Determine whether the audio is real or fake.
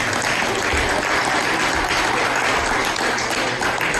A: real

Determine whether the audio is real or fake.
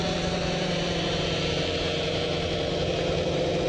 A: fake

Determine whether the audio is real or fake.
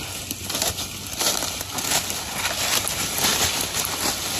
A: real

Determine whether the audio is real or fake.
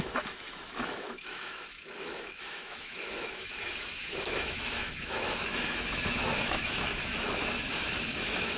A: fake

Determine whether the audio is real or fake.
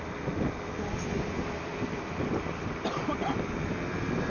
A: fake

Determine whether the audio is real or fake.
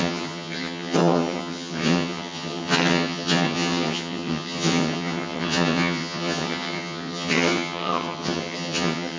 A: fake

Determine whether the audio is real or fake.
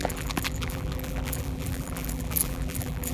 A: fake